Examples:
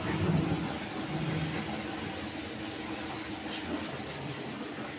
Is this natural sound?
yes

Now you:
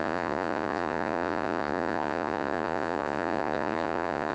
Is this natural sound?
no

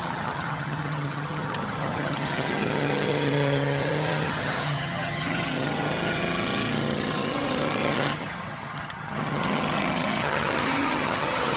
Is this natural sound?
no